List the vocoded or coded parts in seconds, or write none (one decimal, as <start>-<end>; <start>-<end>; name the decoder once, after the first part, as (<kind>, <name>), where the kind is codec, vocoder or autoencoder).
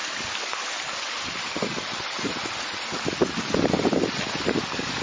none